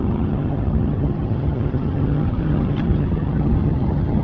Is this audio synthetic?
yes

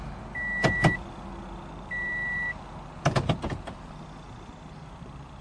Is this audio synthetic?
no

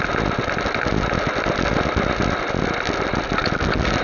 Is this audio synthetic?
no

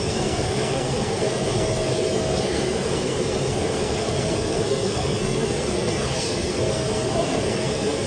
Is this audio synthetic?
yes